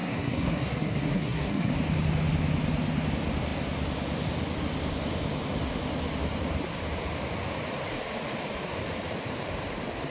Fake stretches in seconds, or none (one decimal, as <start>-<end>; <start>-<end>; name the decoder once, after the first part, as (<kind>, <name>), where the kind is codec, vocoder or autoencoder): 0.0-1.7 (codec, SNAC)